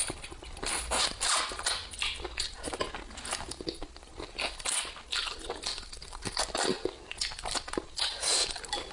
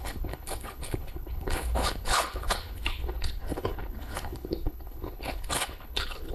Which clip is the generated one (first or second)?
second